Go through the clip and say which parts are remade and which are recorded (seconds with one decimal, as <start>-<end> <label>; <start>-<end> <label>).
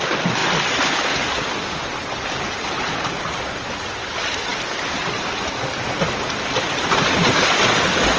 0.0-8.2 recorded